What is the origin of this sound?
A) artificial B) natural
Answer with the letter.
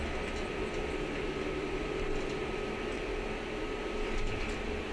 B